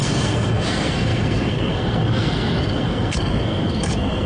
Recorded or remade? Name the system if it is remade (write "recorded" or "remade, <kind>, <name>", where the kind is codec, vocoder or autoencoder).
remade, codec, SNAC